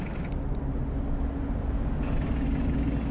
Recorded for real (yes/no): yes